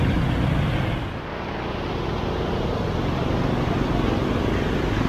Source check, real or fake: real